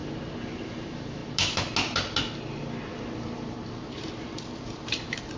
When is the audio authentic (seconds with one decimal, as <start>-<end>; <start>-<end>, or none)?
0.0-0.6; 1.2-3.9